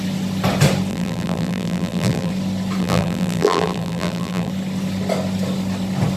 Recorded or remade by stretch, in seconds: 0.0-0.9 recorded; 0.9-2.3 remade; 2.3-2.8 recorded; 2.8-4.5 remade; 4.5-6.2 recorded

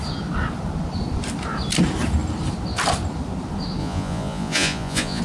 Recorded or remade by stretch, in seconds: 0.0-3.8 recorded; 3.8-5.2 remade

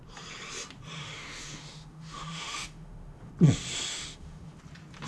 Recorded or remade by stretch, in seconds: 0.0-1.0 recorded; 1.0-3.3 remade; 3.3-3.9 recorded; 3.9-4.6 remade; 4.6-5.1 recorded

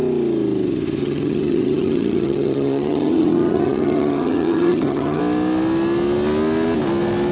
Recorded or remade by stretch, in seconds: 0.0-1.0 recorded; 1.0-5.2 remade; 5.2-7.3 recorded